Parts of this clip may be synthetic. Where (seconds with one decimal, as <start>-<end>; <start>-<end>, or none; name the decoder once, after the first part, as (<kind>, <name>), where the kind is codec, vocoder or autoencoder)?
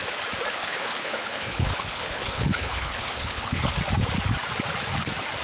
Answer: 0.5-3.7 (codec, HILCodec)